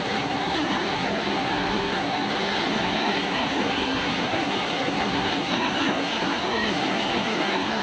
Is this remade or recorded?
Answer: remade